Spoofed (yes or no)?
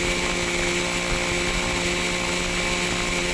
no